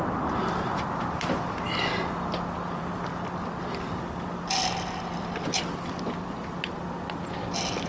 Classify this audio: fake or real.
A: real